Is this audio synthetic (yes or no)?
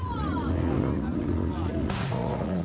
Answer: yes